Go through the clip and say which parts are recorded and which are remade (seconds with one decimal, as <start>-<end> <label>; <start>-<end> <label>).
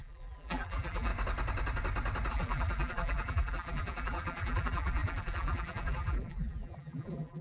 0.0-1.1 remade; 1.1-2.3 recorded; 2.3-7.4 remade